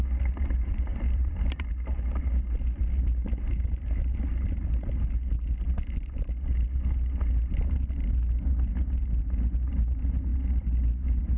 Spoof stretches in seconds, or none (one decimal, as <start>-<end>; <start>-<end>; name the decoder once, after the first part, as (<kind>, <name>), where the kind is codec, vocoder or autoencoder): 0.9-1.7 (vocoder, BigVGAN v2); 10.3-10.8